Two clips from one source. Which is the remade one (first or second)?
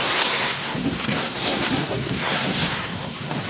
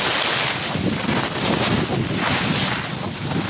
first